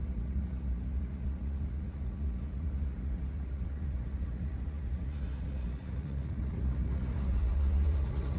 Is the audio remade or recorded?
remade